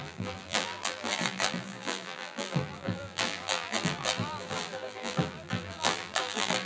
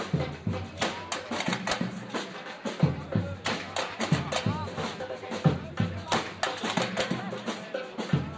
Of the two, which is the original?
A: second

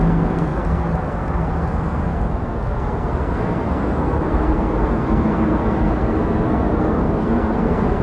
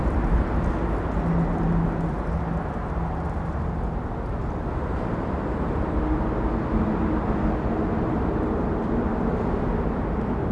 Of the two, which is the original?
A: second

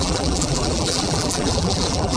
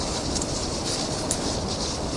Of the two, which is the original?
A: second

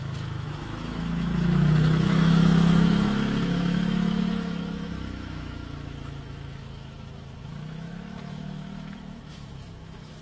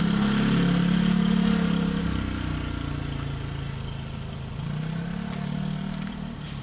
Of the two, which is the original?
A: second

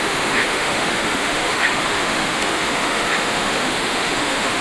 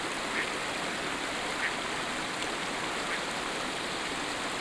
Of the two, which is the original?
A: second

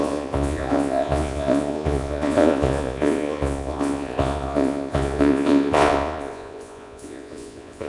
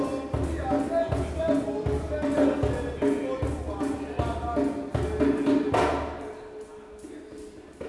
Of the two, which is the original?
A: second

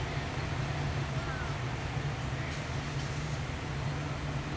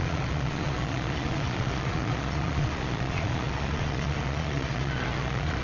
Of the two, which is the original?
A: first